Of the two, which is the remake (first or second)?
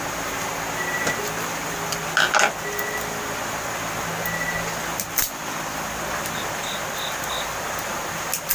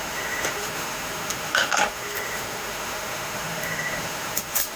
second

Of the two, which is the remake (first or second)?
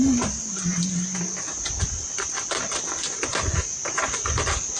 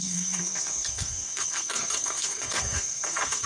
second